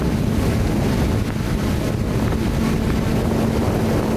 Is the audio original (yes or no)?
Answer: yes